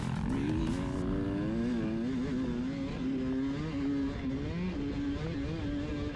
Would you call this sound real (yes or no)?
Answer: yes